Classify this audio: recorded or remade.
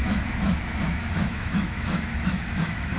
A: remade